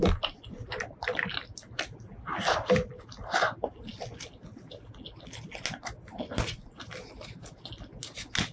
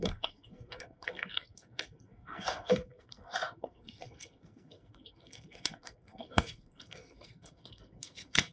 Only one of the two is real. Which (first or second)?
first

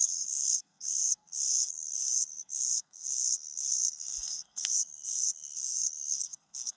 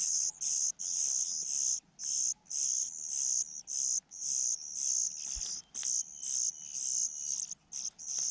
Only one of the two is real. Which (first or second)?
second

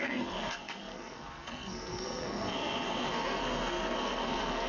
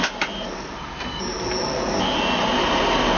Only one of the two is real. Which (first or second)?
second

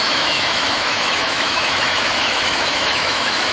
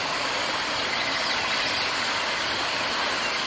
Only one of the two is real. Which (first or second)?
second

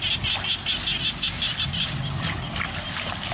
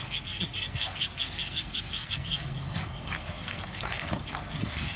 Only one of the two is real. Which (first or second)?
first